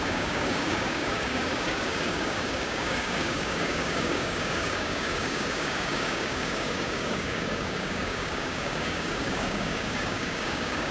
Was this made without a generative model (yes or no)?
no